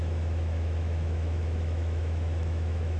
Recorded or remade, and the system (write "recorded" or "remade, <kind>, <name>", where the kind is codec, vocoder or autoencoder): remade, autoencoder, DAC-VAE